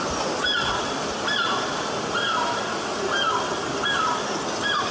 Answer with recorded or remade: recorded